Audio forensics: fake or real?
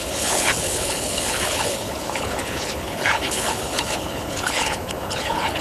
fake